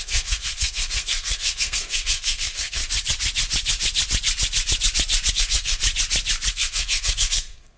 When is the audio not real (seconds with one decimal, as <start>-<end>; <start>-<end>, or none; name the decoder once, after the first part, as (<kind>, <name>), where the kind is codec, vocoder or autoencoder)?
0.0-2.8 (codec, SNAC); 5.3-5.8; 6.5-7.8